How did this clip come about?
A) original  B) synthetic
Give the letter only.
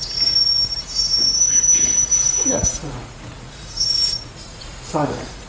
B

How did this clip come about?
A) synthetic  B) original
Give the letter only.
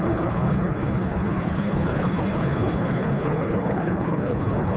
A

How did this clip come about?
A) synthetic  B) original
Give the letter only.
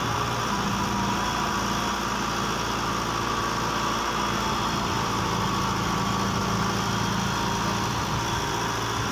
B